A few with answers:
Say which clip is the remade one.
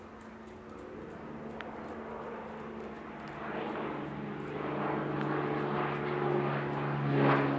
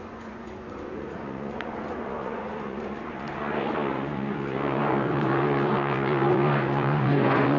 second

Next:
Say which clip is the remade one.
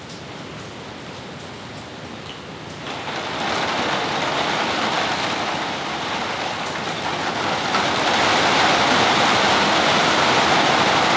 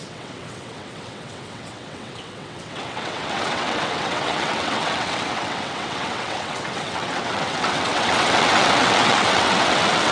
second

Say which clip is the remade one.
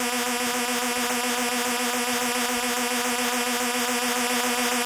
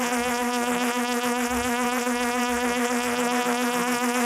second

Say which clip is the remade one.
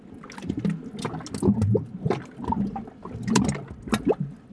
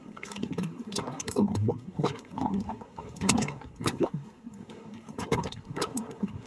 second